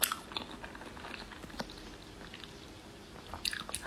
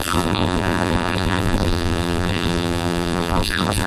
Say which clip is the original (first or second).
first